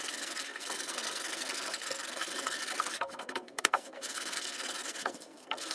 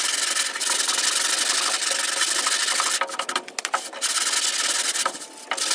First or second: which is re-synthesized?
first